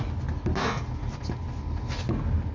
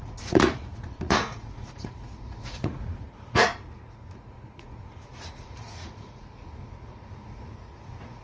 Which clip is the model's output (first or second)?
second